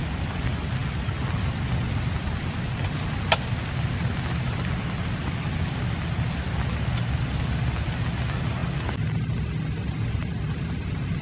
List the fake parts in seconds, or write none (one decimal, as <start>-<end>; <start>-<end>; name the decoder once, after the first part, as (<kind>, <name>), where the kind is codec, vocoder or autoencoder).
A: none